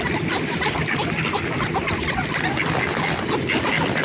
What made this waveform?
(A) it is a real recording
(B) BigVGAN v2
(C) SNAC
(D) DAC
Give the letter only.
A